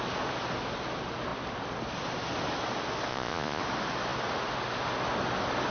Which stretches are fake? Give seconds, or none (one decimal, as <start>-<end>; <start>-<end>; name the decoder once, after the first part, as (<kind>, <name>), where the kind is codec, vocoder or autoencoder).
3.1-3.6 (vocoder, Vocos)